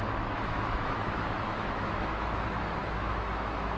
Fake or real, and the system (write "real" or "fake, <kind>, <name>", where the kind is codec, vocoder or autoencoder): fake, autoencoder, DAC-VAE